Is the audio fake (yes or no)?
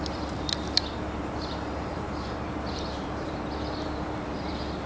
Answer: yes